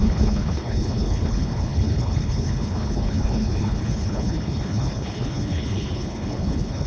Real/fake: fake